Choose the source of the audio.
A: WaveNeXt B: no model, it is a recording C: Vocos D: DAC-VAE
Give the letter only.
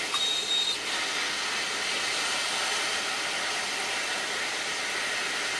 B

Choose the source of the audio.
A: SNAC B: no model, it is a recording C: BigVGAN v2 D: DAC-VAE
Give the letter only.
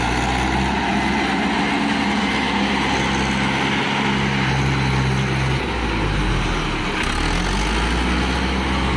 B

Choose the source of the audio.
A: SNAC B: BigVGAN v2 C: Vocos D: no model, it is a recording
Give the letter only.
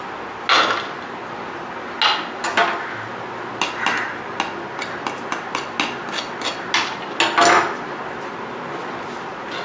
D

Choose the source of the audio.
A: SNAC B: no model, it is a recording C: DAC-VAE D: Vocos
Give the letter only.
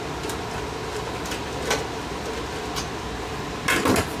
B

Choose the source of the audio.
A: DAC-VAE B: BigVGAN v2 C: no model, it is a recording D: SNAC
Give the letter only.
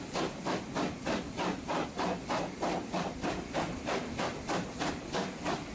C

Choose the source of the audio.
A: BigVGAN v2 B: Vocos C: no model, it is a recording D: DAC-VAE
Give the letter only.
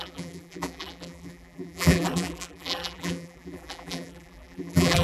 A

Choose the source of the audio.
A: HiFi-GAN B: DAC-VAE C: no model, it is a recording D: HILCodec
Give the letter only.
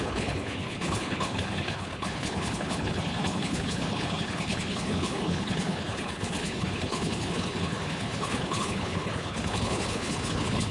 D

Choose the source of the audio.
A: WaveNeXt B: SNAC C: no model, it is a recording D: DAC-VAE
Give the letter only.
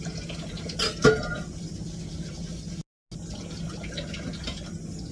C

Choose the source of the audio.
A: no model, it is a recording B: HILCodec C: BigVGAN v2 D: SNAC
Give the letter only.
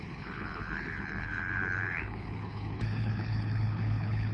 B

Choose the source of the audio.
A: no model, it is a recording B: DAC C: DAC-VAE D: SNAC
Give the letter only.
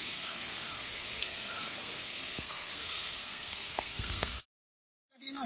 D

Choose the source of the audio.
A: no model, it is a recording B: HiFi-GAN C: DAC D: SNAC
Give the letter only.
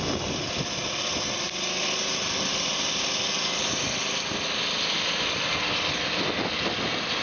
A